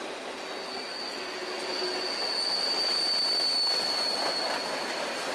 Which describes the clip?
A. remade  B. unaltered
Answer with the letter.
B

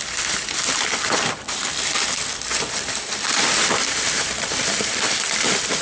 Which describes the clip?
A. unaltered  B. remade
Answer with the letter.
B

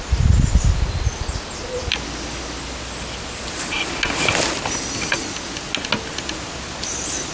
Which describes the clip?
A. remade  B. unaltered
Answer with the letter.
B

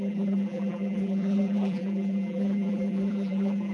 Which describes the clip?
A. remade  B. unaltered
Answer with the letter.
A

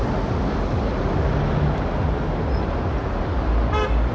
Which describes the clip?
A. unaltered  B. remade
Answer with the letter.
A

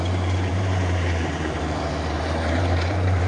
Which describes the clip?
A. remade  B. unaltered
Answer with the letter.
A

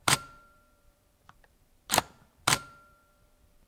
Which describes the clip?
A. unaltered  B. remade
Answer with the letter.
B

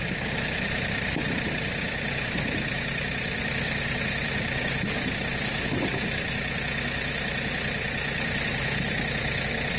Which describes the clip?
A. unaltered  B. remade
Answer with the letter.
B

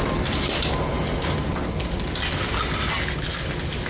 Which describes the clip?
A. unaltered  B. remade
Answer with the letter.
A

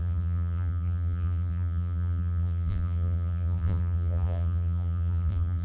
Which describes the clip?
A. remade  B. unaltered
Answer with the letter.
A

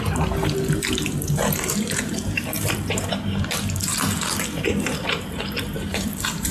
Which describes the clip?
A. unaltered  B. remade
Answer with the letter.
B